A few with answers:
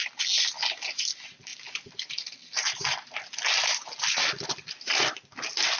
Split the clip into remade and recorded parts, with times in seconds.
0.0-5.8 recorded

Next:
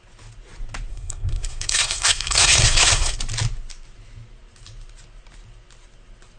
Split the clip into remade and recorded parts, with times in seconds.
0.0-0.9 recorded; 0.9-3.2 remade; 3.2-6.4 recorded

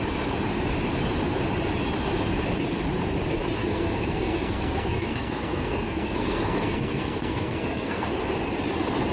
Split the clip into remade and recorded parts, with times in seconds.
0.0-3.6 recorded; 3.6-8.2 remade; 8.2-9.1 recorded

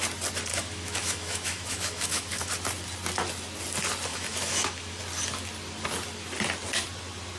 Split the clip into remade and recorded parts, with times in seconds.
0.0-0.5 recorded; 0.5-2.5 remade; 2.5-4.1 recorded; 4.1-5.0 remade; 5.0-7.4 recorded

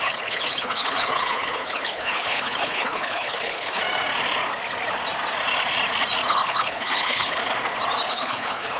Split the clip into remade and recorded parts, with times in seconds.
0.0-3.8 remade; 3.8-6.3 recorded; 6.3-7.4 remade; 7.4-8.1 recorded; 8.1-8.8 remade